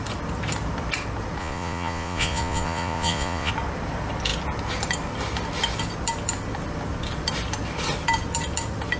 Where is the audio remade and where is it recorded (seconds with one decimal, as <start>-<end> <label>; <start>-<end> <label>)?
0.0-1.4 recorded; 1.4-3.5 remade; 3.5-9.0 recorded